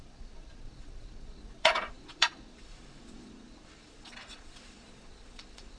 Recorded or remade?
remade